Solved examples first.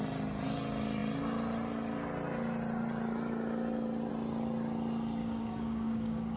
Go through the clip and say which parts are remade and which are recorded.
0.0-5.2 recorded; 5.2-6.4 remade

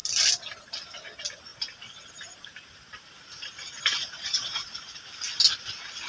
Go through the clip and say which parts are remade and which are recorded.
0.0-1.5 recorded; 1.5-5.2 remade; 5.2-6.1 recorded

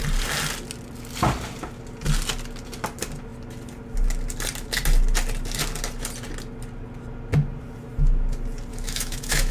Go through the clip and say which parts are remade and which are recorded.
0.0-8.7 recorded; 8.7-9.5 remade

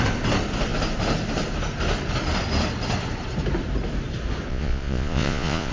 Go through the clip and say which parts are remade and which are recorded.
0.0-4.5 recorded; 4.5-5.7 remade

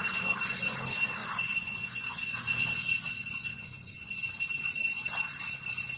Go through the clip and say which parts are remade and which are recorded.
0.0-1.2 recorded; 1.2-4.3 remade; 4.3-6.0 recorded

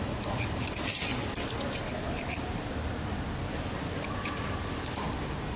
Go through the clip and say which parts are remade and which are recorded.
0.0-5.6 recorded

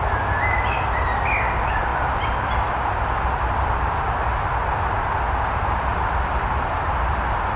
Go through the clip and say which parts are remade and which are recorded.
0.0-7.6 recorded